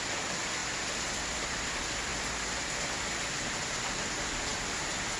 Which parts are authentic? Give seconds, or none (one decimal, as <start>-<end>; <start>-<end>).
0.0-0.6; 1.7-2.1; 3.1-5.2